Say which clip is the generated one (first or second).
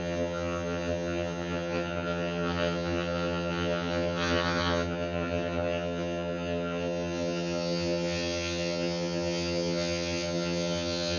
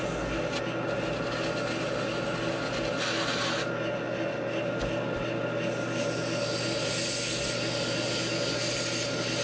first